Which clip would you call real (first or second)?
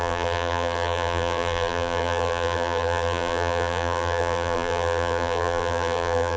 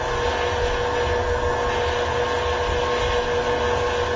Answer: second